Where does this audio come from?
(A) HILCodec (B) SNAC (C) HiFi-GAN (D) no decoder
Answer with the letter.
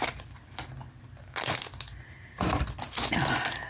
D